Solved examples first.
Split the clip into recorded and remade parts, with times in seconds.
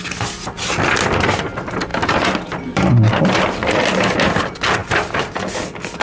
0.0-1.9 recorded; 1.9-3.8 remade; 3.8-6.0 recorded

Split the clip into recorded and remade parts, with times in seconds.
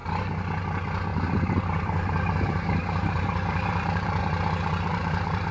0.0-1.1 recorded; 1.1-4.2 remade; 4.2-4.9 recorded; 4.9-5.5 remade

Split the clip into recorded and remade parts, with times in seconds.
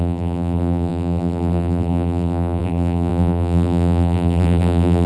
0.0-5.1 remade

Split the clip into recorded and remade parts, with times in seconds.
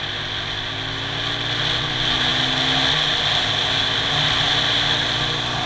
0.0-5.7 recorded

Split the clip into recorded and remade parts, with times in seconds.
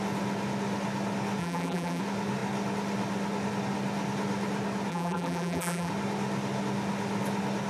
0.0-1.4 recorded; 1.4-2.0 remade; 2.0-4.9 recorded; 4.9-5.9 remade; 5.9-7.7 recorded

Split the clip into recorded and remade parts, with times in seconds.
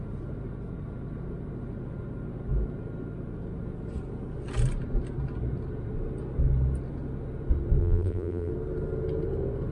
0.0-7.8 recorded; 7.8-8.5 remade; 8.5-9.7 recorded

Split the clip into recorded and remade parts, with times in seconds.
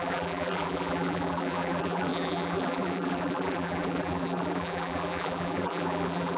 0.0-6.4 remade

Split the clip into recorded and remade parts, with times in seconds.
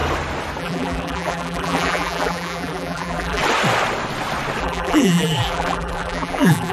0.0-0.6 recorded; 0.6-3.4 remade; 3.4-4.6 recorded; 4.6-6.7 remade